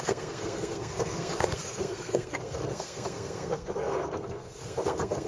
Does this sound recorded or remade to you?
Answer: remade